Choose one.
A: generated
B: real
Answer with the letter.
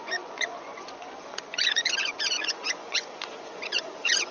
A